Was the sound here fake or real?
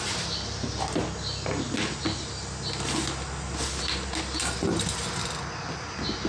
real